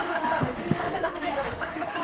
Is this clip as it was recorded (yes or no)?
no